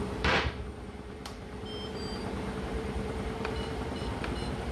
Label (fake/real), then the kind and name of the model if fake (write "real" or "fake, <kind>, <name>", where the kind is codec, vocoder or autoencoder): fake, vocoder, BigVGAN v2